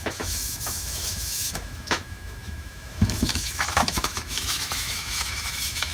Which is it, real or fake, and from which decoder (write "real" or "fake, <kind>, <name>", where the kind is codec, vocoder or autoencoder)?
fake, autoencoder, DAC-VAE